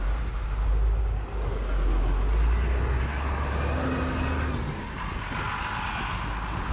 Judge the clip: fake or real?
real